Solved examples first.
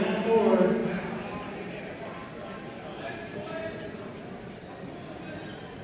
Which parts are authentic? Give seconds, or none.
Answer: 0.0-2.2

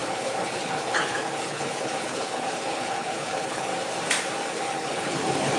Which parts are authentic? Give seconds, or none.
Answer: 3.7-4.5

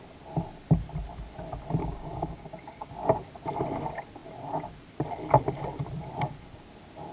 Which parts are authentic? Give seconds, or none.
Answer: 0.0-1.8; 2.9-7.1